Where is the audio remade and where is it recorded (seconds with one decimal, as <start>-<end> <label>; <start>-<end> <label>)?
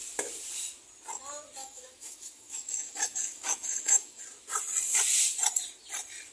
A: 0.0-1.6 recorded; 1.6-4.2 remade; 4.2-6.3 recorded